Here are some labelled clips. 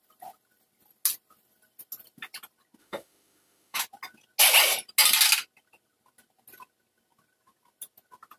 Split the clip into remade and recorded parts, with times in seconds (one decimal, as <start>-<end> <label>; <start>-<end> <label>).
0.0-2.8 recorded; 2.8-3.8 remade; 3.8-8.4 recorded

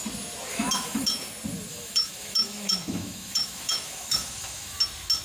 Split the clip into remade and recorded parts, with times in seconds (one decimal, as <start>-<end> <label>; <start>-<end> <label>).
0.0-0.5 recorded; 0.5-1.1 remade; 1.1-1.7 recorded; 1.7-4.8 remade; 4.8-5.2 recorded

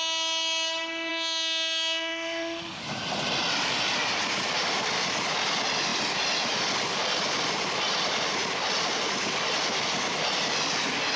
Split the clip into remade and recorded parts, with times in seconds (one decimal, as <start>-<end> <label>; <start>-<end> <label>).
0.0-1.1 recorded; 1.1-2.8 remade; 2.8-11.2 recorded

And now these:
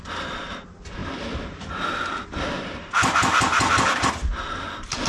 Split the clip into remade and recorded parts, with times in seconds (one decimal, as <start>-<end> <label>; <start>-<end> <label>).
0.0-5.1 recorded

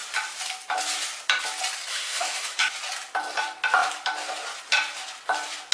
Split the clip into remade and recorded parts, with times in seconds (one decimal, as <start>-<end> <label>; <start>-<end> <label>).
0.0-1.9 recorded; 1.9-2.6 remade; 2.6-5.7 recorded

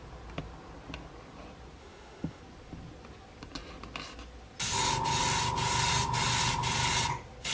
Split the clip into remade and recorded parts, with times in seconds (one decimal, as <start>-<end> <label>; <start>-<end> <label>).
0.0-1.8 recorded; 1.8-2.4 remade; 2.4-7.5 recorded

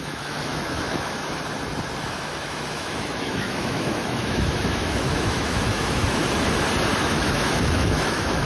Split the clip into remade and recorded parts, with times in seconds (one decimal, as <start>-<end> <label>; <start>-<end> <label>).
0.0-1.2 remade; 1.2-2.0 recorded; 2.0-6.2 remade; 6.2-7.0 recorded; 7.0-8.5 remade

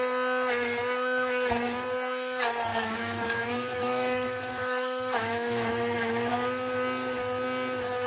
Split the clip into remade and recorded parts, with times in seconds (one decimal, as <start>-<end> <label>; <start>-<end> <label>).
0.0-2.7 recorded; 2.7-6.3 remade; 6.3-8.1 recorded